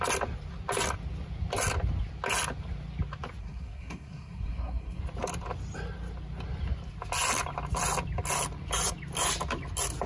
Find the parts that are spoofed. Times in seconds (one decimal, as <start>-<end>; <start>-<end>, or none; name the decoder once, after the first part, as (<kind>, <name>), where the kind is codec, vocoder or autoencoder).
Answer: 3.4-5.0 (codec, SNAC)